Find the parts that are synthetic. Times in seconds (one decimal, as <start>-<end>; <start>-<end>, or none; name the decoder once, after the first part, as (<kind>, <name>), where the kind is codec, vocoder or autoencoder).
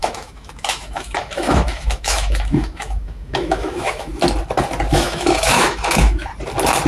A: 0.0-4.1 (autoencoder, DAC-VAE); 4.9-6.3